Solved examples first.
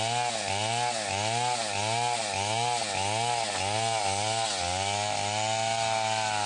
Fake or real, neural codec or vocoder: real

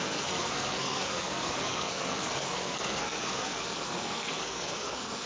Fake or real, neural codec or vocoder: fake, codec, SNAC